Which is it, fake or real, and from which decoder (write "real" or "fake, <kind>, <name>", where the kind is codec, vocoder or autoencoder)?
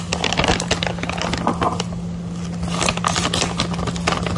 real